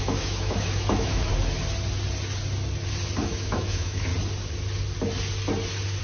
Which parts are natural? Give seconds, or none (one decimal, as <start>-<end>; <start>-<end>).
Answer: 1.3-3.2; 4.1-6.0